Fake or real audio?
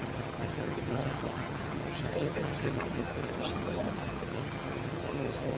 fake